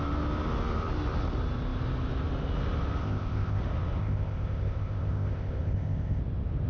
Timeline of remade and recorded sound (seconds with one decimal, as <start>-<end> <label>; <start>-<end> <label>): 0.0-3.0 recorded; 3.0-3.6 remade; 3.6-4.0 recorded; 4.0-6.2 remade; 6.2-6.7 recorded